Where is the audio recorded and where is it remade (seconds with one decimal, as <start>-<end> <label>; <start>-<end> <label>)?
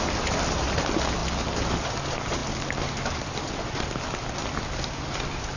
0.0-5.6 recorded